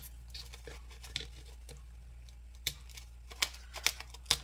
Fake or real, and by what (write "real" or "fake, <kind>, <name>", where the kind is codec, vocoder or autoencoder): real